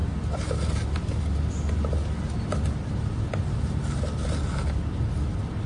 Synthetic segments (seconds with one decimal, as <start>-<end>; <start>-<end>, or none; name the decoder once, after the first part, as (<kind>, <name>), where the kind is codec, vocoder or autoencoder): none